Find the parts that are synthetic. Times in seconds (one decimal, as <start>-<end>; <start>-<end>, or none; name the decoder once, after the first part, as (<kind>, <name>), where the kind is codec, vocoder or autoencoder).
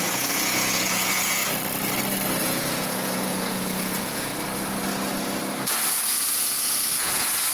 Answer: 0.0-1.4 (vocoder, Vocos); 2.4-4.3; 5.9-7.5